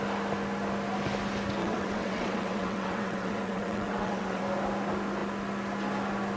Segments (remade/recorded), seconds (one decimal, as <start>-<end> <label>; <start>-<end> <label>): 0.0-1.6 recorded; 1.6-4.4 remade; 4.4-6.4 recorded